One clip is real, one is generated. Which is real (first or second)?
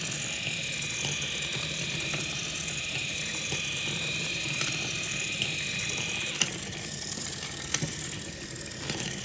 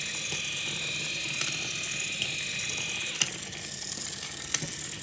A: second